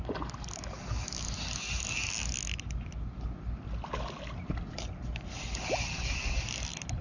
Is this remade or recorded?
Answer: recorded